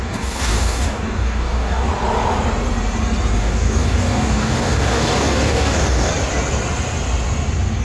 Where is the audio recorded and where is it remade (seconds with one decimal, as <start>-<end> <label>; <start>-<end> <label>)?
0.0-1.9 remade; 1.9-3.4 recorded; 3.4-6.1 remade; 6.1-7.8 recorded